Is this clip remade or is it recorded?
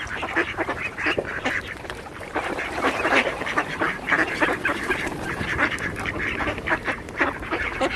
remade